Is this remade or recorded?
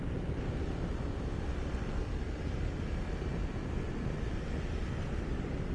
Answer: recorded